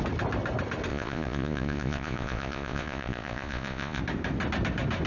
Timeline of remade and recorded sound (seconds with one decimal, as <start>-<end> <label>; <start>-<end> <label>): 0.0-0.9 recorded; 0.9-4.0 remade; 4.0-5.1 recorded

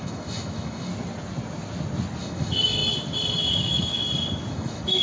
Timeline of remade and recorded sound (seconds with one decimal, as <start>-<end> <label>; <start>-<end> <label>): 0.0-0.9 remade; 0.9-2.2 recorded; 2.2-2.8 remade; 2.8-3.4 recorded; 3.4-4.0 remade; 4.0-4.5 recorded; 4.5-5.0 remade

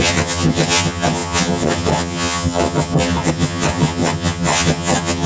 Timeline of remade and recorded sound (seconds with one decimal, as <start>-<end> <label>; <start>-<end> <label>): 0.0-5.3 remade

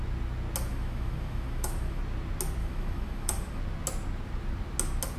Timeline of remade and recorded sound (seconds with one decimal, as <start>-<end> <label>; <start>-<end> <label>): 0.0-0.7 recorded; 0.7-2.0 remade; 2.0-2.6 recorded; 2.6-3.6 remade; 3.6-5.2 recorded

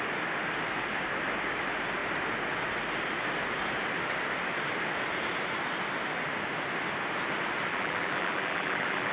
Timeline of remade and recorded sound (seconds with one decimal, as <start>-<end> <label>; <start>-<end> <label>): 0.0-7.7 recorded; 7.7-9.1 remade

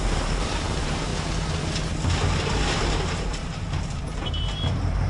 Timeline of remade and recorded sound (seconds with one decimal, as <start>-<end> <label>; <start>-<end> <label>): 0.0-1.1 remade; 1.1-2.6 recorded; 2.6-5.1 remade